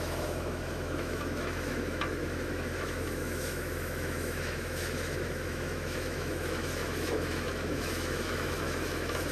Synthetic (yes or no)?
yes